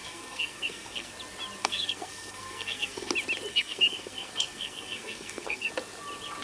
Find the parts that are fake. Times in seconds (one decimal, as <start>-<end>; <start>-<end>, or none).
0.0-1.1; 1.6-3.1; 3.5-5.7